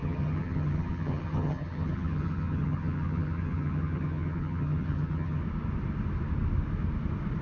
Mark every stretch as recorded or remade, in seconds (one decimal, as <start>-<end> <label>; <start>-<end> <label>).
0.0-5.4 remade; 5.4-7.4 recorded

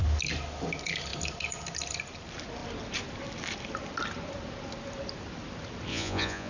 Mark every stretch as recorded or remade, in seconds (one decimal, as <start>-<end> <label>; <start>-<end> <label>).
0.0-5.9 recorded; 5.9-6.5 remade

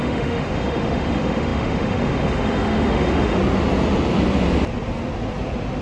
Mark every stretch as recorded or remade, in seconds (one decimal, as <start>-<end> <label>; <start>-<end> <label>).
0.0-3.4 remade; 3.4-5.8 recorded